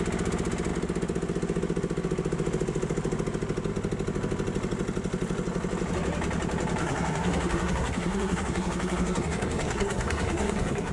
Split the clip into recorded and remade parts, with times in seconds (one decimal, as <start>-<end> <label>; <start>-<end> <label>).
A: 0.0-6.8 recorded; 6.8-10.9 remade

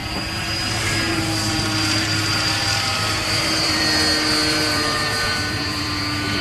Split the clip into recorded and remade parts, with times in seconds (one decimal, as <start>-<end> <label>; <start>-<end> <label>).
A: 0.0-3.8 remade; 3.8-4.4 recorded; 4.4-6.0 remade; 6.0-6.4 recorded

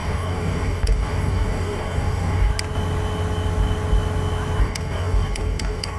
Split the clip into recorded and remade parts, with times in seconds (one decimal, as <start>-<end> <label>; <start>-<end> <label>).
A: 0.0-2.5 remade; 2.5-4.6 recorded; 4.6-6.0 remade

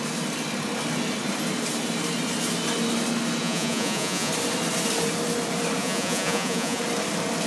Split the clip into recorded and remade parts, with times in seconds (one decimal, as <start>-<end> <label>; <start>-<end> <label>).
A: 0.0-3.4 recorded; 3.4-4.3 remade; 4.3-5.8 recorded; 5.8-6.8 remade; 6.8-7.5 recorded